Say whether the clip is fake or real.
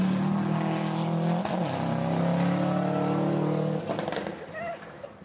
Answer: real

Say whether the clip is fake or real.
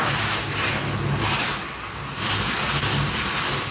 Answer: real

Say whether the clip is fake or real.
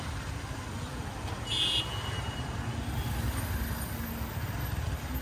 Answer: real